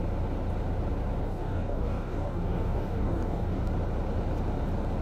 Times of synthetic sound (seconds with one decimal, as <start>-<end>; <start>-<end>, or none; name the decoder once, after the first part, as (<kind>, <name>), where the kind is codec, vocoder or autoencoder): 1.2-3.7 (codec, DAC)